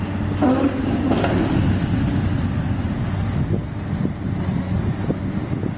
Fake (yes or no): no